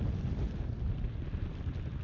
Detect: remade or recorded recorded